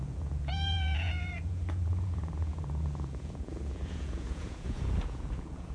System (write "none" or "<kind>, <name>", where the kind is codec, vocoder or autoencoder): vocoder, Vocos